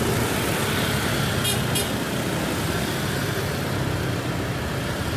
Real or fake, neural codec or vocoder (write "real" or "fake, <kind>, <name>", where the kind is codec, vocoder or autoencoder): real